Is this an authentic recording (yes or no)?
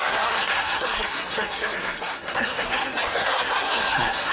no